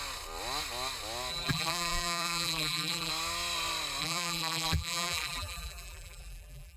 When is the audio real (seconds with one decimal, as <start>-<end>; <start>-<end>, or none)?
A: 0.0-1.3; 3.1-4.0